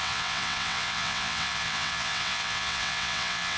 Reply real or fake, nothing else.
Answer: fake